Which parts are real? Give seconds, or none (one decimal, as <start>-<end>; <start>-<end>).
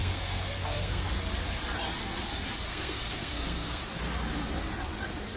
1.1-2.7; 3.8-5.4